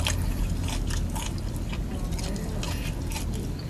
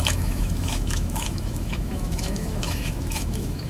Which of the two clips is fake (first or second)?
second